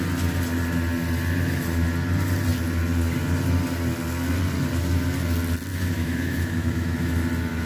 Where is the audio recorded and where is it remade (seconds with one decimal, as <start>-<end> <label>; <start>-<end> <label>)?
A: 0.0-5.7 recorded; 5.7-7.1 remade; 7.1-7.7 recorded